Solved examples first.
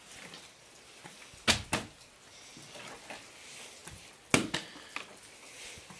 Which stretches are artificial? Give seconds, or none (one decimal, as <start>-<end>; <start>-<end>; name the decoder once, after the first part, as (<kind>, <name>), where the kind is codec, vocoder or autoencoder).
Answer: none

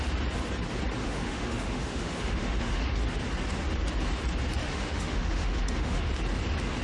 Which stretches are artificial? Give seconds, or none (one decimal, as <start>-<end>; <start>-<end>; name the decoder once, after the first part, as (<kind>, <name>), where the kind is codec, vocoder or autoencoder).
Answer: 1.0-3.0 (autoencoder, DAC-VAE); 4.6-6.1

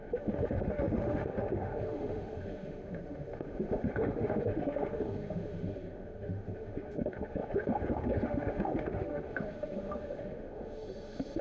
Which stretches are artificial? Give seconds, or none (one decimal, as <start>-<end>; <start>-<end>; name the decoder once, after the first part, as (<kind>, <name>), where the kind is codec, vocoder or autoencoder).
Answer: 0.0-11.4 (autoencoder, DAC-VAE)